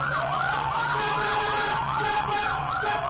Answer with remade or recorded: remade